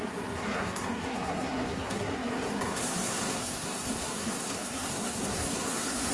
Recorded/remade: remade